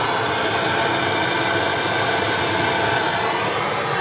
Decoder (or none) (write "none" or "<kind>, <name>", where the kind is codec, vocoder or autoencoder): none